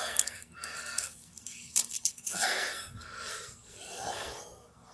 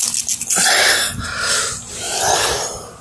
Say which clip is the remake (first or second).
first